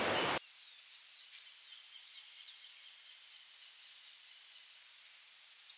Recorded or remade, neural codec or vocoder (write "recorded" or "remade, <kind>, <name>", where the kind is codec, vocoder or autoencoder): recorded